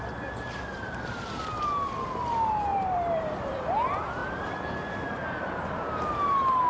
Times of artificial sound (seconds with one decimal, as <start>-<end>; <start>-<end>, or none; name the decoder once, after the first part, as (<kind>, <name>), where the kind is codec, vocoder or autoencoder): 0.7-1.4 (vocoder, BigVGAN v2); 2.7-3.6